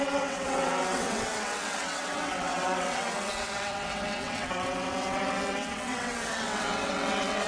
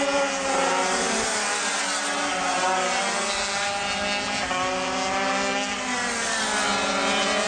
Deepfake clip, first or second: first